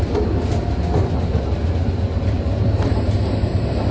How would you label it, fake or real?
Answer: real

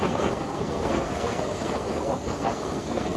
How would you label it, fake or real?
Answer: fake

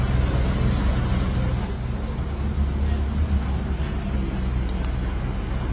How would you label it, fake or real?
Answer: real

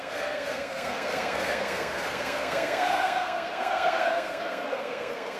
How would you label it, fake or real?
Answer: fake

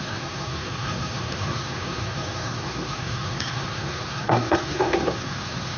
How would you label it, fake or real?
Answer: fake